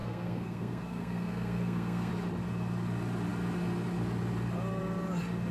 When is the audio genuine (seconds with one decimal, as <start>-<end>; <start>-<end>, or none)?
2.1-5.5